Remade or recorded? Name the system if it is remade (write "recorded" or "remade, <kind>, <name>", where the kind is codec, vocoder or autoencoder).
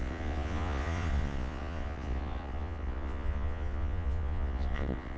remade, vocoder, Vocos